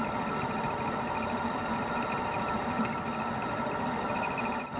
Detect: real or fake real